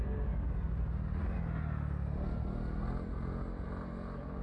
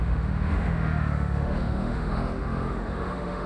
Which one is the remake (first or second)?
second